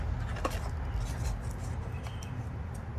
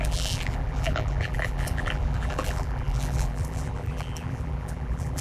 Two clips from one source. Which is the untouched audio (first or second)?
first